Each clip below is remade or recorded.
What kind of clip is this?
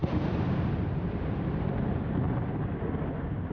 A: recorded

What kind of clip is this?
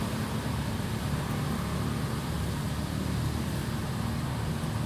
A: recorded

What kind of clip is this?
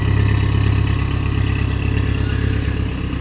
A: recorded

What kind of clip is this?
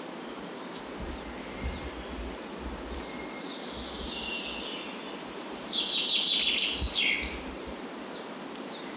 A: recorded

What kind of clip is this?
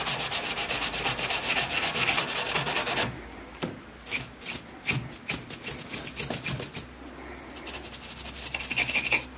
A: recorded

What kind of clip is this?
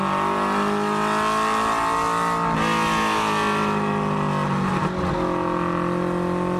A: recorded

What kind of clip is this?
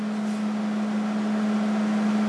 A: recorded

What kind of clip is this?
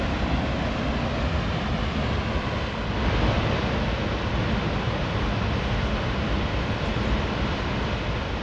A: recorded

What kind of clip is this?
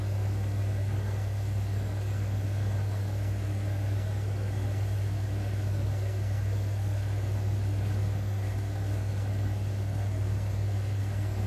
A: remade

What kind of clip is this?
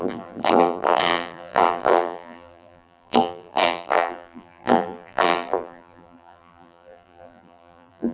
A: remade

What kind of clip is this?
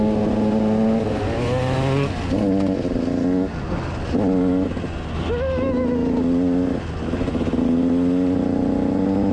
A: recorded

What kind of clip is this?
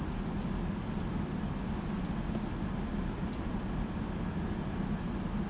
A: recorded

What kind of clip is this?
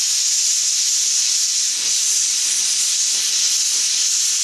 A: recorded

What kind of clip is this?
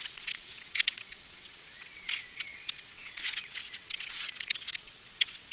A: remade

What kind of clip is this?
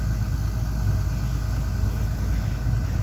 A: recorded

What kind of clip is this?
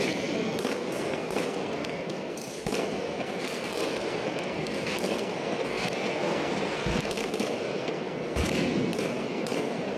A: remade